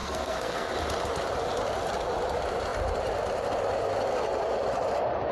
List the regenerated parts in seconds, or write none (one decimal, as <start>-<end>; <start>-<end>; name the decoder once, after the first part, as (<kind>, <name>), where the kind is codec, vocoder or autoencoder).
0.0-0.7 (codec, SNAC)